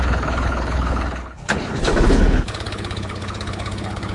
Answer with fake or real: fake